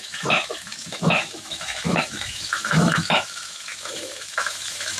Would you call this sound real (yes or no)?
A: no